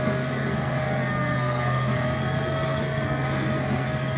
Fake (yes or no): yes